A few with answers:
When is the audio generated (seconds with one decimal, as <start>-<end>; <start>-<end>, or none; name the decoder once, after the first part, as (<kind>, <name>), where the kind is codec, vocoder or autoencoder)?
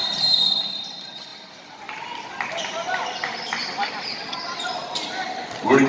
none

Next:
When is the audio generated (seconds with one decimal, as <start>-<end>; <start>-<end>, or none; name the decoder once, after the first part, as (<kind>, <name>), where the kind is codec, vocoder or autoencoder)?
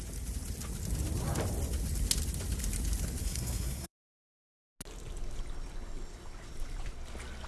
3.2-4.0 (codec, SNAC)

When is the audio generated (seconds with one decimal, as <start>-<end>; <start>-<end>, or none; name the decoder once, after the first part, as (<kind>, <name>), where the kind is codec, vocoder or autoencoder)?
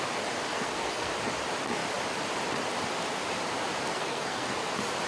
0.5-1.1 (codec, SNAC); 3.9-4.6